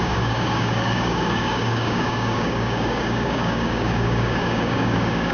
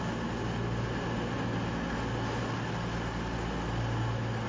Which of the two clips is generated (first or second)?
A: first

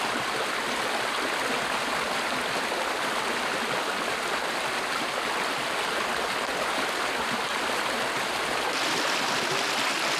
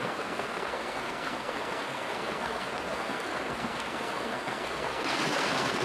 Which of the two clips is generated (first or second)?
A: second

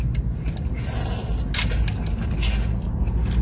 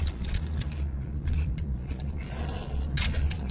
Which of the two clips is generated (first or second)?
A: second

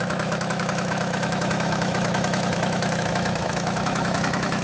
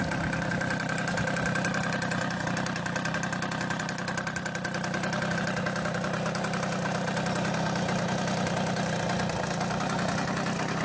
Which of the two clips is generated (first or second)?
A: first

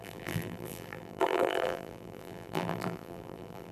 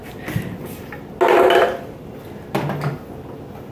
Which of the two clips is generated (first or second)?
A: first